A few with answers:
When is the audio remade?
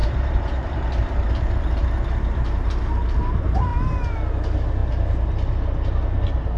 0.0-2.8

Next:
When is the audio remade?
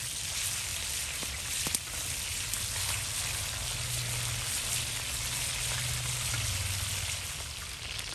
none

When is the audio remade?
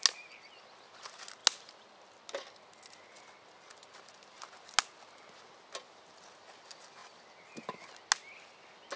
none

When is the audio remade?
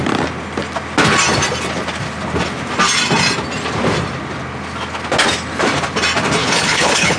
6.4-7.2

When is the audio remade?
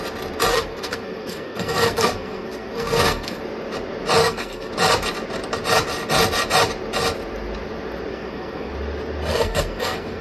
0.5-3.4; 4.2-4.7; 8.1-8.7; 9.3-10.2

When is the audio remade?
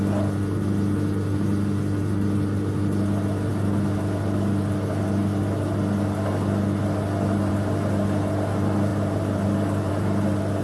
none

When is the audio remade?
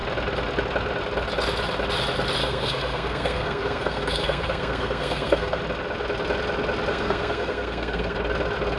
2.4-5.6; 6.9-8.2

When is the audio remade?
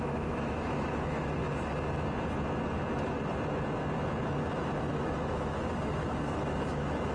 0.0-1.4; 4.9-7.1